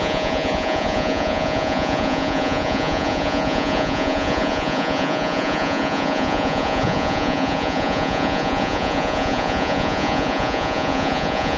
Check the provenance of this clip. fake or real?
fake